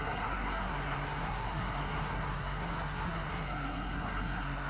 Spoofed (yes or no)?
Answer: yes